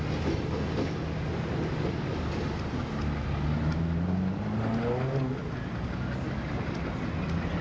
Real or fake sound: real